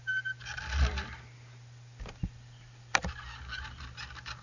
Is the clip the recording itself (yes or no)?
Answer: yes